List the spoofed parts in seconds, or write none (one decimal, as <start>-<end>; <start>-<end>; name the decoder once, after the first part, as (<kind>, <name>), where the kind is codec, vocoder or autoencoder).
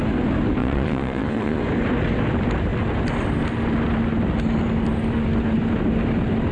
0.6-1.6 (vocoder, Vocos)